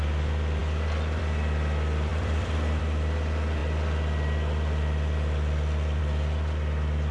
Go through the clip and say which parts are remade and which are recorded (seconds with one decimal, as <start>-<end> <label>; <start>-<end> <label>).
0.0-2.1 recorded; 2.1-2.8 remade; 2.8-7.1 recorded